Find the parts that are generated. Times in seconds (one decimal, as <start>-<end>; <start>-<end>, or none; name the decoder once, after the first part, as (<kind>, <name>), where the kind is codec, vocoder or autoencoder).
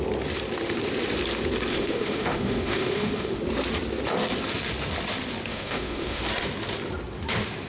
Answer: 1.7-3.4 (autoencoder, DAC-VAE); 5.5-6.2